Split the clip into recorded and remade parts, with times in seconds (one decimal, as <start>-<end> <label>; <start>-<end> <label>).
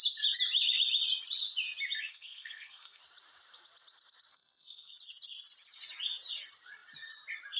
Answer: 0.0-2.1 recorded; 2.1-3.0 remade; 3.0-4.3 recorded; 4.3-4.9 remade; 4.9-7.6 recorded